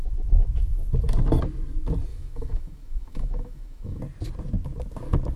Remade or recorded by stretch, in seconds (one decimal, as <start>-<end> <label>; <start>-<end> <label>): 0.0-2.1 recorded; 2.1-4.0 remade; 4.0-5.4 recorded